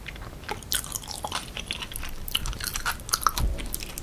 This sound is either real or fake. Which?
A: fake